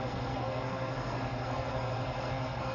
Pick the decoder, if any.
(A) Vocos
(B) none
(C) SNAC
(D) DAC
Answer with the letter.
C